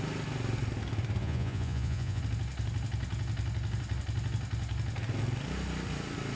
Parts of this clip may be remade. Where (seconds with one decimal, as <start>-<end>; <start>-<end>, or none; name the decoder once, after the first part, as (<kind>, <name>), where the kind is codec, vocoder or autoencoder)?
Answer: 1.2-2.2 (vocoder, Vocos)

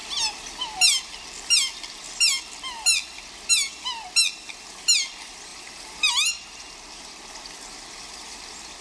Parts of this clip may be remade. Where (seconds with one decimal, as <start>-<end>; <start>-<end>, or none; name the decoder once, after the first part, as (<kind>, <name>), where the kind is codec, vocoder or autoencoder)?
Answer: 5.5-6.1 (vocoder, BigVGAN v2)

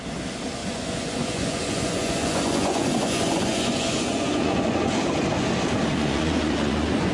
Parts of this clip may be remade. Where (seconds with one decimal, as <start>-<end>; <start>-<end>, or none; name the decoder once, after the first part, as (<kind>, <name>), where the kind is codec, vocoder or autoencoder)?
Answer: 0.6-4.9 (vocoder, Vocos); 5.9-7.1

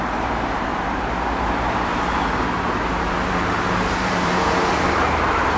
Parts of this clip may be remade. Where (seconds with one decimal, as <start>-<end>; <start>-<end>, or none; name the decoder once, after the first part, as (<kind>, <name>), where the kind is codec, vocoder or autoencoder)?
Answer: 0.0-0.7 (vocoder, BigVGAN v2); 3.0-5.6

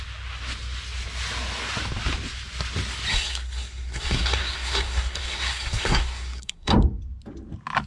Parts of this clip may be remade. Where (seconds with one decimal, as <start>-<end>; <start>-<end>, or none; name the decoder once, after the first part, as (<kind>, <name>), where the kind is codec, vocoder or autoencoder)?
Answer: 3.1-6.7 (codec, SNAC)

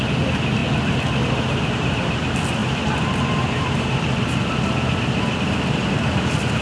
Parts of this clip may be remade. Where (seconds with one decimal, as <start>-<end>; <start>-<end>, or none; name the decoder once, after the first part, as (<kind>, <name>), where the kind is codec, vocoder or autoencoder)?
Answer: none

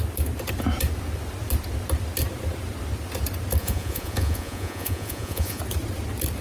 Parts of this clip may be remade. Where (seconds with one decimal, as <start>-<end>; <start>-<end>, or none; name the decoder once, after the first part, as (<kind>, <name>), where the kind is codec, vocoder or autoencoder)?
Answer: 3.6-5.6 (vocoder, Vocos)

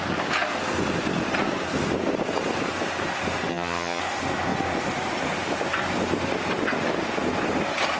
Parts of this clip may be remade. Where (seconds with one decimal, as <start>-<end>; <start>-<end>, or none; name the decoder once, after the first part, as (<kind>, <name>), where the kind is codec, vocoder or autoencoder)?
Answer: 3.5-4.0 (vocoder, HiFi-GAN)